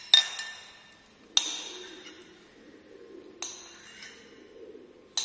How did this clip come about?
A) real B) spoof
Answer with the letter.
A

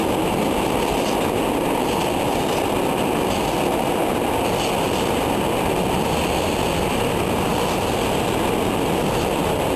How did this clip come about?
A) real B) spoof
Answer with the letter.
A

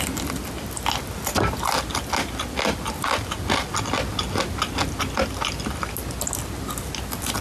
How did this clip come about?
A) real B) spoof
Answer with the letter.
A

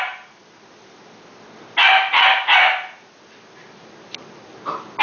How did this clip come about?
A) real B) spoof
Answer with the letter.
A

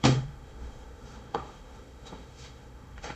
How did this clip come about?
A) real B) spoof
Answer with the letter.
B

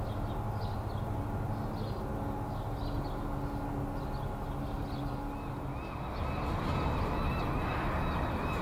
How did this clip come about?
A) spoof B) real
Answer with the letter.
B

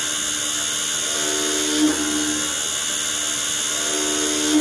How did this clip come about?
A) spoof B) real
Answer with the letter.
B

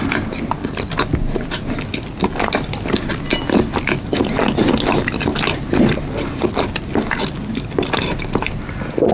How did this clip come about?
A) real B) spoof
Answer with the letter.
A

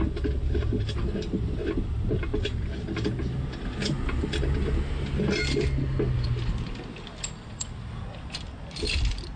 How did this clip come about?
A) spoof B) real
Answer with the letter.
B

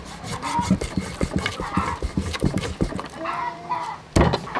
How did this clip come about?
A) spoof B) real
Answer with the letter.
B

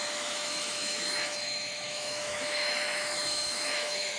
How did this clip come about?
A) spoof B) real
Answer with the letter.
A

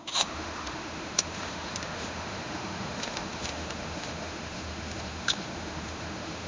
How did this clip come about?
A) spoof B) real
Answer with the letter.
A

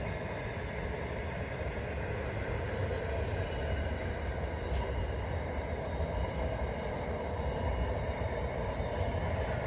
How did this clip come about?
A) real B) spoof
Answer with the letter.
A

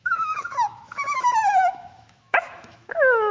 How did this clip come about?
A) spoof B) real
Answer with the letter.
A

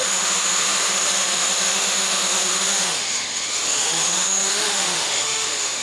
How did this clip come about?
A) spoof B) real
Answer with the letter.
A